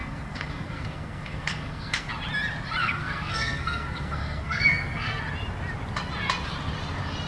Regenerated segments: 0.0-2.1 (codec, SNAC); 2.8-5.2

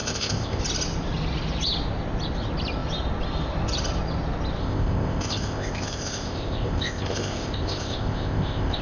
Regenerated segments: 0.0-0.6 (codec, ZipCodec); 4.6-8.8

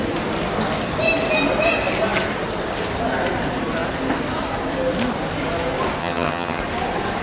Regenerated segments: 6.0-6.6 (vocoder, HiFi-GAN)

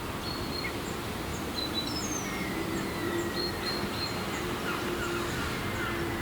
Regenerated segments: 1.3-2.0 (vocoder, BigVGAN v2); 3.0-4.5

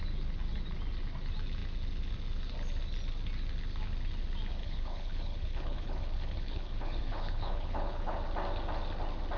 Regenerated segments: 4.6-8.2 (codec, HILCodec)

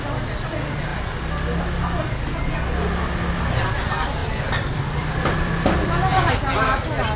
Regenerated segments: 4.2-6.3 (vocoder, BigVGAN v2)